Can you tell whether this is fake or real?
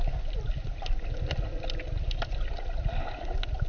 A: real